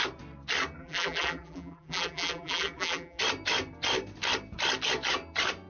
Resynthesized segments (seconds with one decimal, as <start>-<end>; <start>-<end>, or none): 0.8-3.2